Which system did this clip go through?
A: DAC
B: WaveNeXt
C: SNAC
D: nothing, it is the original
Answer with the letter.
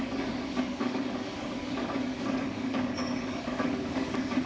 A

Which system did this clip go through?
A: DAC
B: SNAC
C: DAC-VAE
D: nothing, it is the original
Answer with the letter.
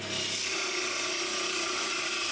D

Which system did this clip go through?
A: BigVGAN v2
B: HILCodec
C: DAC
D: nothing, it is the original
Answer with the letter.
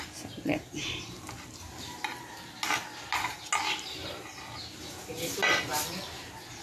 D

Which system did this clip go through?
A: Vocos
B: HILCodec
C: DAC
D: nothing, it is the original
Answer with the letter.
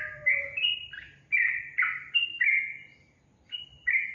D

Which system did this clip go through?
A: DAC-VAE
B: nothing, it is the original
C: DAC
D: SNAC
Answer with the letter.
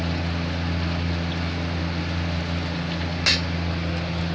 B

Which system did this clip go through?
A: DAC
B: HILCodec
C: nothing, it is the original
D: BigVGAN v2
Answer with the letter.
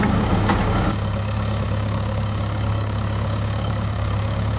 A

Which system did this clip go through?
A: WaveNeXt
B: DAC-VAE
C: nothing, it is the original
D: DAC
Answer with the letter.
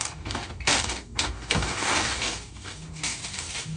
D